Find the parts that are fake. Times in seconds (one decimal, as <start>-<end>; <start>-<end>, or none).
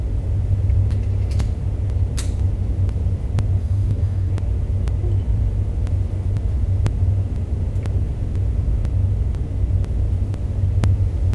3.6-4.3